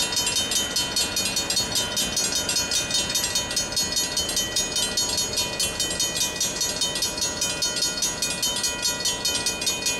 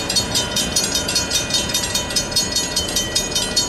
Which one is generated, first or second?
second